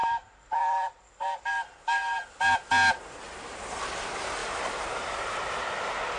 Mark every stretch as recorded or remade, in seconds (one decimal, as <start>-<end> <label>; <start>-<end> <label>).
0.0-1.4 remade; 1.4-4.4 recorded; 4.4-5.4 remade; 5.4-6.2 recorded